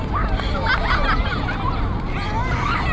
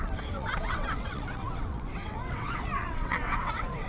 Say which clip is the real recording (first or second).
first